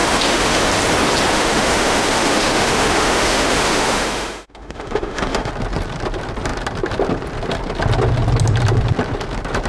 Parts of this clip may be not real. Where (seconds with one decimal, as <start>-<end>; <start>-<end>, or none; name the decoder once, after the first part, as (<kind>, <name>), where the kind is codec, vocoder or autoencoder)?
0.0-0.7 (autoencoder, DAC-VAE); 1.3-5.5